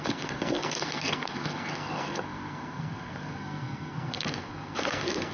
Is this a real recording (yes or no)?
no